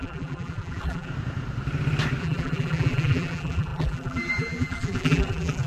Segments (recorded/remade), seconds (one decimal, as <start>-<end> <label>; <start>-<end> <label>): 0.0-1.1 remade; 1.1-2.2 recorded; 2.2-5.7 remade